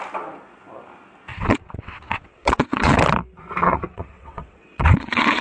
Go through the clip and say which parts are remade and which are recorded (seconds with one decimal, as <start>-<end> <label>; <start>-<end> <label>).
0.0-1.3 recorded; 1.3-3.0 remade; 3.0-3.6 recorded; 3.6-5.4 remade